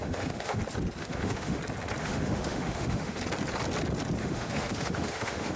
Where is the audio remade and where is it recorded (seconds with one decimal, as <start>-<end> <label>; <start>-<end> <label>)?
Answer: 0.0-0.6 remade; 0.6-1.0 recorded; 1.0-1.6 remade; 1.6-2.0 recorded; 2.0-3.2 remade; 3.2-4.2 recorded; 4.2-5.6 remade